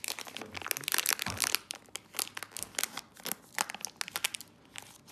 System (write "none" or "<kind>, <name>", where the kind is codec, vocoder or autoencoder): none